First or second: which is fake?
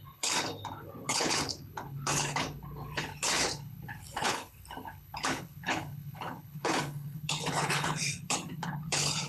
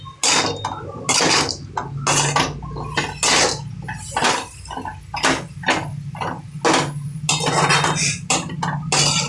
first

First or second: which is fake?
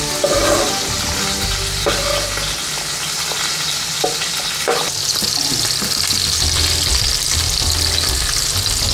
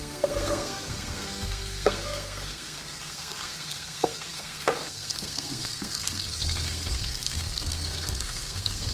second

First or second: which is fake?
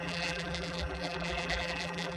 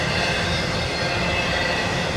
first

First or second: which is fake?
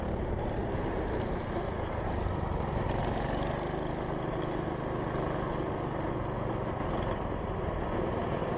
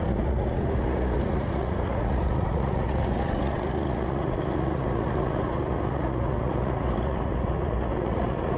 second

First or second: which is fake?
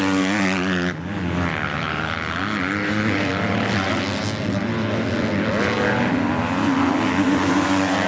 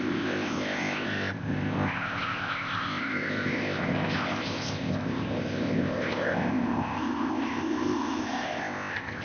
second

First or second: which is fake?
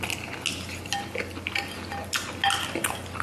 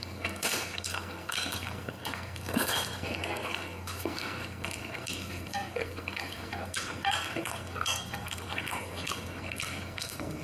second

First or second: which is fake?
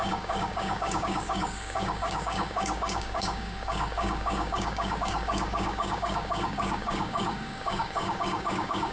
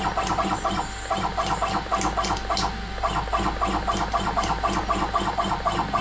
first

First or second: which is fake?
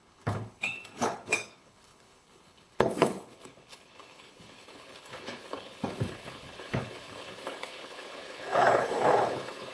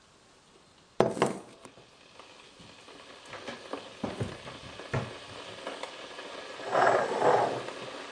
first